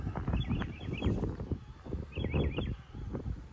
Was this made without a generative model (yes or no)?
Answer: yes